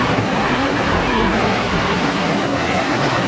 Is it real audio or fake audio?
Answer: fake